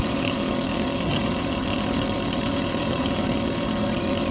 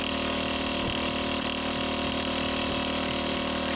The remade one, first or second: first